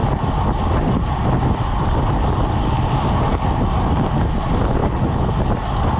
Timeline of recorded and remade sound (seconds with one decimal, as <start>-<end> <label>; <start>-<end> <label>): 0.0-4.8 recorded; 4.8-5.3 remade; 5.3-6.0 recorded